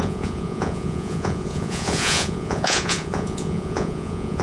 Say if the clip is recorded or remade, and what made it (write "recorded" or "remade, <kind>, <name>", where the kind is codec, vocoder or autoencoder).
remade, vocoder, Vocos